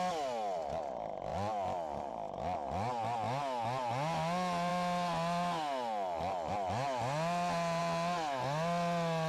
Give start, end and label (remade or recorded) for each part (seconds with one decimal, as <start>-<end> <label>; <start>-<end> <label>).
0.0-9.3 recorded